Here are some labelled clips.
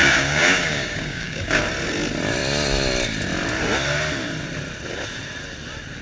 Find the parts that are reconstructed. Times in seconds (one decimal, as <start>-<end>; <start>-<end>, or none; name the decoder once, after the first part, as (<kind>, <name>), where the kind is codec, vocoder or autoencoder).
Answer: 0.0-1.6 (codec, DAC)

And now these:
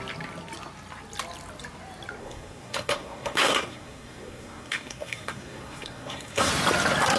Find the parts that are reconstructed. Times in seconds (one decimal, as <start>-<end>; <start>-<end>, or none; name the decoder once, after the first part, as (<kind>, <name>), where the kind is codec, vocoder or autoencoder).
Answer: 2.2-6.5 (codec, SNAC)

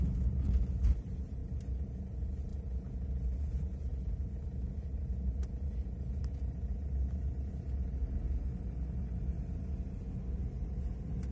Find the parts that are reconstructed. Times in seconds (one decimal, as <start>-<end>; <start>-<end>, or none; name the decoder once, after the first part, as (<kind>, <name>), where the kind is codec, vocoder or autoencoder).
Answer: none

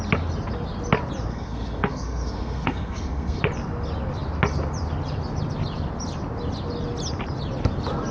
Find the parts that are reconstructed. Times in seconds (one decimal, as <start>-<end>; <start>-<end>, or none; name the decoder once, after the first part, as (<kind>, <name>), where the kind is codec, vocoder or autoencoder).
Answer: 1.3-3.4 (codec, SNAC)

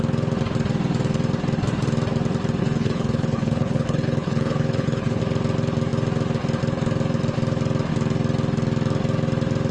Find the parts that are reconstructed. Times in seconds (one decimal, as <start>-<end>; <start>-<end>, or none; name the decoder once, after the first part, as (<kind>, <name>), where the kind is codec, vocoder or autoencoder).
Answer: 2.6-5.2 (codec, HILCodec)